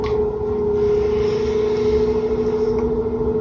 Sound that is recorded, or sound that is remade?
recorded